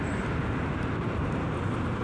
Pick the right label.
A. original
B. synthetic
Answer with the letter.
A